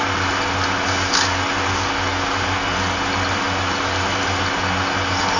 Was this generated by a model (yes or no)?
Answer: no